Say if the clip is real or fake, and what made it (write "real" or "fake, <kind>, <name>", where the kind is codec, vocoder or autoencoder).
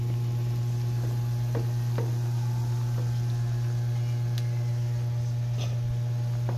real